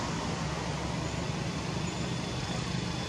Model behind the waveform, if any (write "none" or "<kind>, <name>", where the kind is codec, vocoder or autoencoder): none